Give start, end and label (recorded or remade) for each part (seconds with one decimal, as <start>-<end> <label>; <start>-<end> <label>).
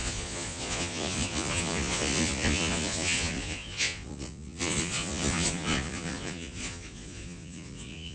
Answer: 0.0-8.1 remade